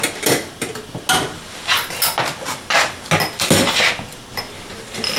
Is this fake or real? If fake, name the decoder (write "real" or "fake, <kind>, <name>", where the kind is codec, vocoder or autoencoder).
real